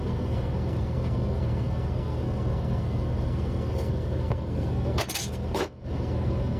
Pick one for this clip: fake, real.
fake